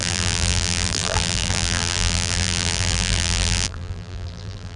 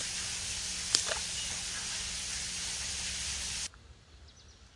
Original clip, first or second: second